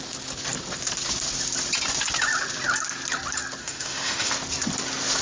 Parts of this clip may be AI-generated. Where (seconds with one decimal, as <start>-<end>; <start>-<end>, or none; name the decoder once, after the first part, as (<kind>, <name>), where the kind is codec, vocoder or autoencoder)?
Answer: 3.6-4.3 (autoencoder, DAC-VAE)